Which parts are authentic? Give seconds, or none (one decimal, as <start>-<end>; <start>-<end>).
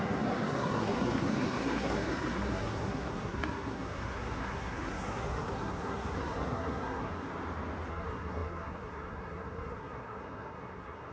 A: 7.3-7.9